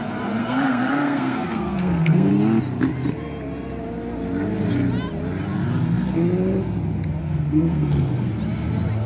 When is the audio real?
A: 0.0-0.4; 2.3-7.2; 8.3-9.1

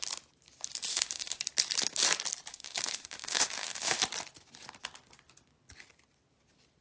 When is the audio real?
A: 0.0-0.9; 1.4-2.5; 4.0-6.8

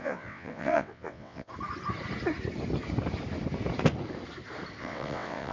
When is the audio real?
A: 1.5-4.8